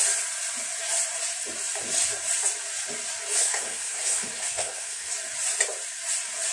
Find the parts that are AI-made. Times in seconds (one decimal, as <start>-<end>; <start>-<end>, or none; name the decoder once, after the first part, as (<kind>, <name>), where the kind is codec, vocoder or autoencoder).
3.4-5.1 (codec, SNAC)